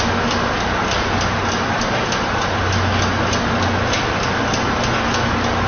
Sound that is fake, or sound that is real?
real